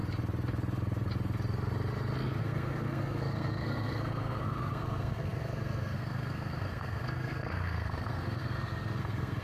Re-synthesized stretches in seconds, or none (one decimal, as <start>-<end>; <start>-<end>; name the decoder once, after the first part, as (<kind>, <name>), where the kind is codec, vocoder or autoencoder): 2.4-9.4 (codec, SNAC)